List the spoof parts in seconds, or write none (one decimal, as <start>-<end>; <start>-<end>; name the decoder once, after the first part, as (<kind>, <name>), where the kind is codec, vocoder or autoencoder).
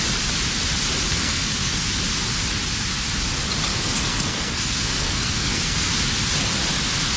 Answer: 1.1-1.8 (codec, SNAC); 3.7-5.9